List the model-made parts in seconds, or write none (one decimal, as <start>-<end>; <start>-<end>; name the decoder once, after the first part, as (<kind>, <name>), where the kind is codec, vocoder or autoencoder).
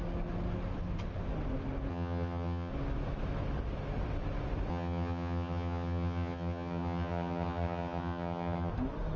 1.9-2.7 (vocoder, HiFi-GAN); 4.7-8.7